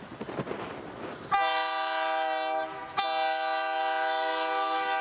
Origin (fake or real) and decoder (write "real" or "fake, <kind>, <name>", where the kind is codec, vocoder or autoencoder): real